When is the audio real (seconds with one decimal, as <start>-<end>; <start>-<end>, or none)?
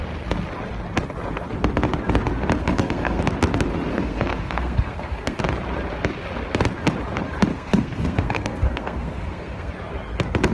0.0-2.6; 3.2-3.9; 5.4-7.5; 9.7-10.5